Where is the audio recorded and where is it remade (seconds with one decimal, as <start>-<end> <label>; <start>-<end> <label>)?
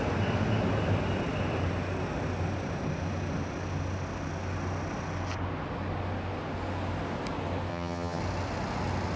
0.0-7.7 recorded; 7.7-8.2 remade; 8.2-9.2 recorded